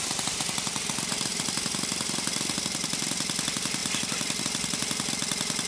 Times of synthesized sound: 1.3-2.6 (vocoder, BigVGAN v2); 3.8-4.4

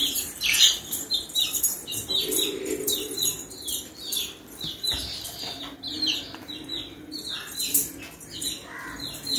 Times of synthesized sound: 0.0-0.6 (vocoder, BigVGAN v2); 5.0-7.6

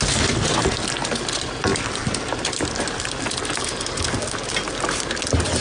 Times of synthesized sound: 1.7-3.2 (vocoder, BigVGAN v2)

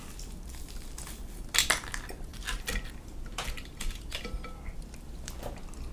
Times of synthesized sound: 2.3-5.5 (vocoder, BigVGAN v2)

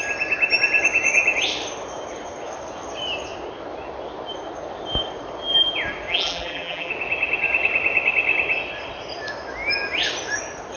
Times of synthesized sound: 6.1-6.9 (vocoder, BigVGAN v2)

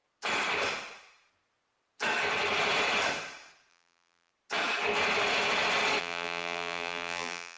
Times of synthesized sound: 3.7-4.3 (vocoder, BigVGAN v2); 6.0-7.6